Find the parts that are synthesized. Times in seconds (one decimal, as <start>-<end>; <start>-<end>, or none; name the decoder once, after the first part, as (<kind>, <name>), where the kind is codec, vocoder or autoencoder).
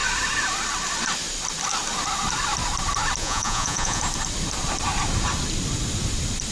3.2-4.0 (vocoder, Vocos)